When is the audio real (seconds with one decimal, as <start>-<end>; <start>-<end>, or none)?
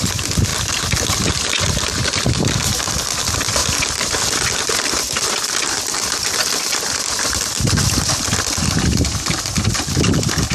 0.0-10.5